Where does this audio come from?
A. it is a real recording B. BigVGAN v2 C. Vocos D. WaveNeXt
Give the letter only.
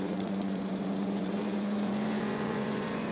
C